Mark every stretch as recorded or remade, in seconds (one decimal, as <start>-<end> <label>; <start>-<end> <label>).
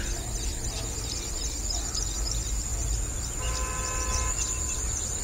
0.0-5.2 recorded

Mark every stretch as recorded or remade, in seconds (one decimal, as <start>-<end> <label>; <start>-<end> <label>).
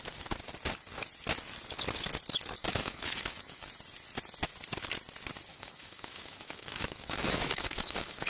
0.0-2.6 recorded; 2.6-3.7 remade; 3.7-5.5 recorded; 5.5-8.3 remade